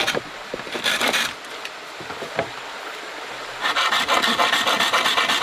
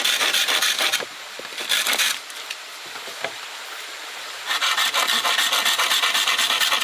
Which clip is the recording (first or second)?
first